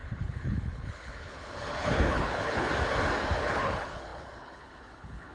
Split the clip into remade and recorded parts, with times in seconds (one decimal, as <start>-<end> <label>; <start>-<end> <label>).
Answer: 0.0-2.7 remade; 2.7-3.4 recorded; 3.4-5.3 remade